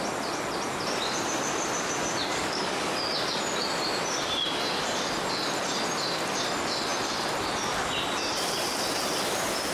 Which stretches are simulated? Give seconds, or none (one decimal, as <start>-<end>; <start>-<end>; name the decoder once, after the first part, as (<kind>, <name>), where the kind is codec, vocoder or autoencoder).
2.3-3.0 (codec, DAC)